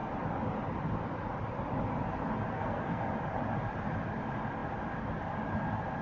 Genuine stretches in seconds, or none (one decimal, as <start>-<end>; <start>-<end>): 0.0-2.5; 3.0-6.0